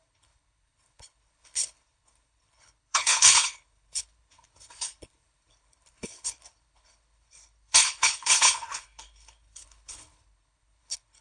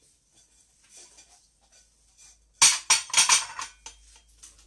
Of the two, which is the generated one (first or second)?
first